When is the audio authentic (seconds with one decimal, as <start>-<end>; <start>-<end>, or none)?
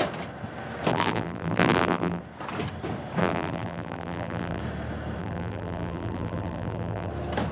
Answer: 0.0-0.9; 2.2-3.2; 4.6-5.2; 7.1-7.5